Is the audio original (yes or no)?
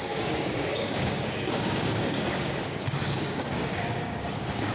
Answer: no